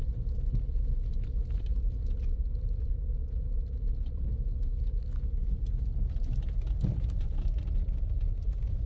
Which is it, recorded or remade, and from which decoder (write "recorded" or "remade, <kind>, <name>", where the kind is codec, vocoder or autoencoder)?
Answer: recorded